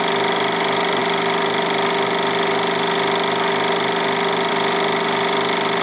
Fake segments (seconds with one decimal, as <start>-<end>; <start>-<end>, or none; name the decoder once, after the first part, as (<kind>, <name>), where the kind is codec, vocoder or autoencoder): none